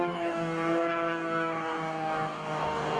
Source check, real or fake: fake